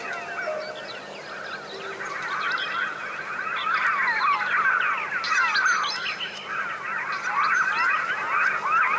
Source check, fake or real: real